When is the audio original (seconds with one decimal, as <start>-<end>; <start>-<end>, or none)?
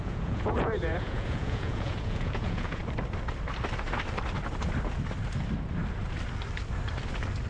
2.8-7.5